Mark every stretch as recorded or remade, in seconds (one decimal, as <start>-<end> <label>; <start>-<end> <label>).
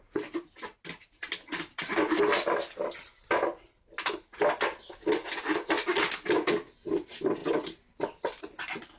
0.0-9.0 recorded